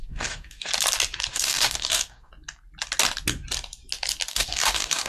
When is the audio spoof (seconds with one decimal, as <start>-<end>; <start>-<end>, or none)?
0.0-0.7; 1.3-2.3; 4.3-5.1